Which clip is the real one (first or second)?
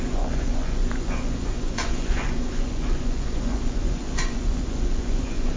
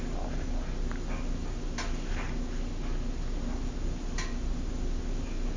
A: second